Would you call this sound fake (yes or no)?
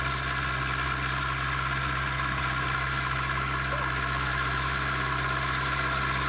no